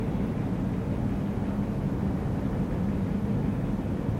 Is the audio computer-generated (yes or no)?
no